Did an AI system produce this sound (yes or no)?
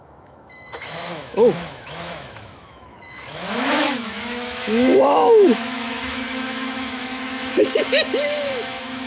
yes